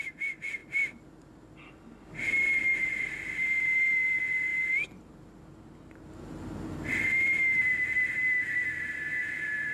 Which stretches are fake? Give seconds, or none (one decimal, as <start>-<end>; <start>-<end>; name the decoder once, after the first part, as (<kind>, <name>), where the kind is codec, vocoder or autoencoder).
9.1-9.7 (vocoder, Vocos)